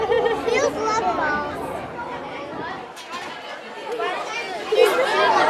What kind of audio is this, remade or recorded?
recorded